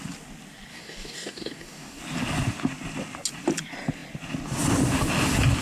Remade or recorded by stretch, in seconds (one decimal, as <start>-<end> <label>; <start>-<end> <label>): 0.0-0.7 recorded; 0.7-2.0 remade; 2.0-5.6 recorded